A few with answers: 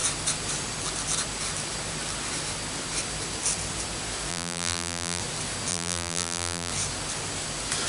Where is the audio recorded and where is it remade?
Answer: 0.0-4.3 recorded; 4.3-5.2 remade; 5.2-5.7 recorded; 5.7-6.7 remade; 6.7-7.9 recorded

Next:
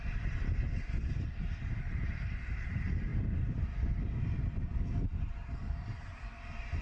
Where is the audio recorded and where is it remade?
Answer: 0.0-3.1 remade; 3.1-5.5 recorded; 5.5-6.8 remade

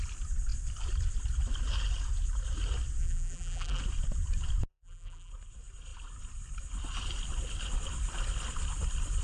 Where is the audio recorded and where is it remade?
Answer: 0.0-3.0 recorded; 3.0-3.8 remade; 3.8-4.7 recorded; 4.7-5.3 remade; 5.3-9.2 recorded

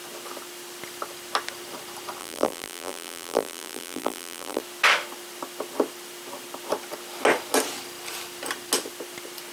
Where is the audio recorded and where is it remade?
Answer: 0.0-2.2 recorded; 2.2-4.6 remade; 4.6-9.5 recorded

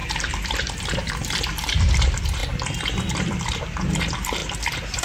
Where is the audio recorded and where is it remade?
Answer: 0.0-2.4 remade; 2.4-3.1 recorded; 3.1-4.4 remade; 4.4-5.0 recorded

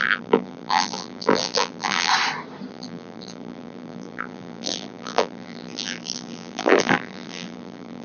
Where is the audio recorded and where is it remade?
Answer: 0.0-2.1 remade; 2.1-2.7 recorded; 2.7-8.0 remade